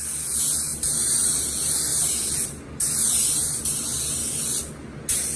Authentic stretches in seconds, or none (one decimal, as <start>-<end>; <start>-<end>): 0.0-5.4